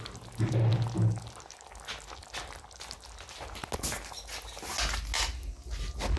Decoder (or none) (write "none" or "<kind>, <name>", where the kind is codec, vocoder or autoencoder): none